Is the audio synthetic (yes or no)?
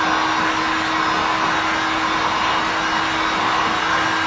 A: no